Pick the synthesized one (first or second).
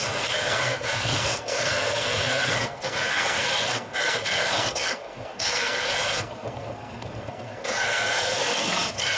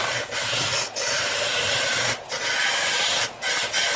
first